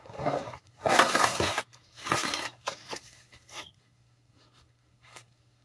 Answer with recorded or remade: remade